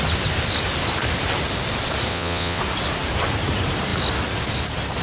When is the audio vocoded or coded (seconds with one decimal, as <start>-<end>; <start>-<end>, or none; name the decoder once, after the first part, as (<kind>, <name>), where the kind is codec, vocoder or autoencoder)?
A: 2.1-2.6 (vocoder, WaveNeXt)